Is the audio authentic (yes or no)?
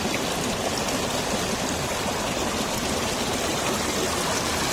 yes